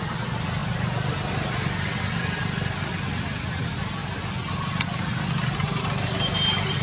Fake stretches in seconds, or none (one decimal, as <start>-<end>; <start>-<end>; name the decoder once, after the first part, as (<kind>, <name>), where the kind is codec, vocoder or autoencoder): none

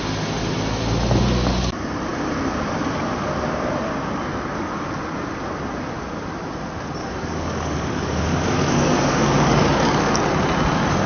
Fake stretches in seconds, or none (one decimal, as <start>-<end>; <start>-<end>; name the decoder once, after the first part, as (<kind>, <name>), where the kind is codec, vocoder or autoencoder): 7.0-10.1 (codec, DAC)